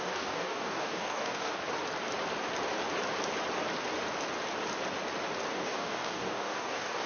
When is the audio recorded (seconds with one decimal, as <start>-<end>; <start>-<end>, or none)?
1.6-5.5